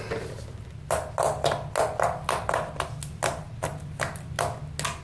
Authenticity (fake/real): real